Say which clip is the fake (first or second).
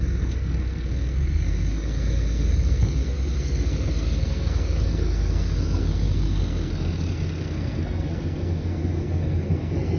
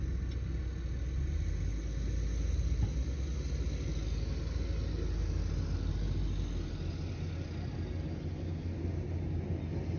first